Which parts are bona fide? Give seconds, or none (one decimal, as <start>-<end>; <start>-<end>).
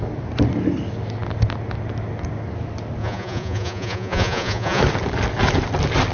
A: 0.0-3.0; 4.8-6.1